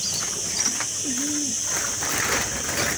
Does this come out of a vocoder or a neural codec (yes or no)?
no